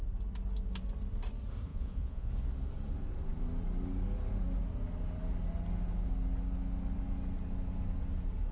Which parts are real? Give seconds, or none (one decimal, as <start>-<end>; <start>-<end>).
0.0-1.7; 2.3-8.5